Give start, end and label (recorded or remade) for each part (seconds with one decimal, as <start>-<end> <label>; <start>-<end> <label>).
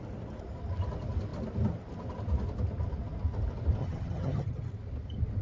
0.0-3.8 recorded; 3.8-4.7 remade; 4.7-5.4 recorded